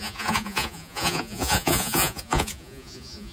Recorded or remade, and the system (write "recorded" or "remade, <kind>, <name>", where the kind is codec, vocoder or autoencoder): remade, vocoder, Vocos